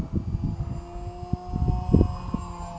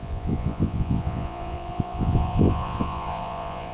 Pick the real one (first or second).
first